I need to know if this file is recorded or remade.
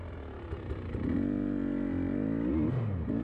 recorded